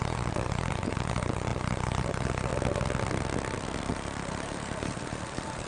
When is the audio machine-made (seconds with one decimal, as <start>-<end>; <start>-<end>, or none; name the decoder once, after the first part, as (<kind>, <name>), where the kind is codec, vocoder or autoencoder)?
0.0-2.5 (vocoder, BigVGAN v2); 3.9-5.7